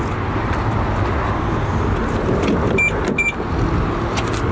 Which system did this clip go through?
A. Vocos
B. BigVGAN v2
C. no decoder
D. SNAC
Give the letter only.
C